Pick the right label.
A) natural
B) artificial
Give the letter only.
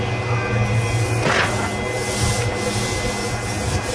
A